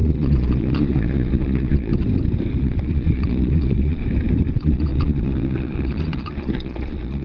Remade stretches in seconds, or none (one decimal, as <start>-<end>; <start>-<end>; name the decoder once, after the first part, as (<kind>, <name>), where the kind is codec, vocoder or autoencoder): 0.0-1.9 (vocoder, Vocos); 2.6-4.0; 4.5-7.2